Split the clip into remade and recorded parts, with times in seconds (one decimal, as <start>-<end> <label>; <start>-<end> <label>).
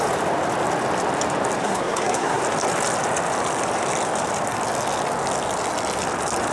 0.0-1.6 recorded; 1.6-2.4 remade; 2.4-6.5 recorded